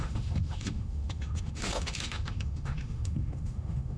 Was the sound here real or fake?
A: fake